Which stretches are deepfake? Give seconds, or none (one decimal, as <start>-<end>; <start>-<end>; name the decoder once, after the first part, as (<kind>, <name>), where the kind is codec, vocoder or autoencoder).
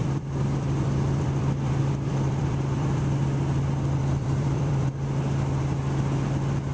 0.0-3.0 (vocoder, BigVGAN v2); 4.0-4.9